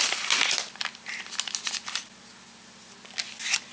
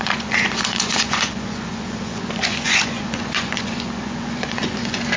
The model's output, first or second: second